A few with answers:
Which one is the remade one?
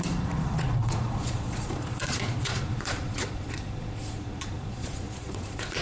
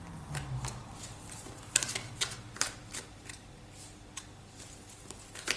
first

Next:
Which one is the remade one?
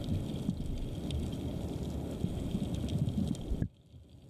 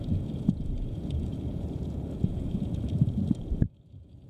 second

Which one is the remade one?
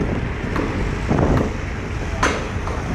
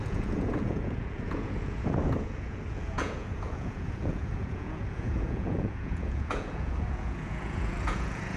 second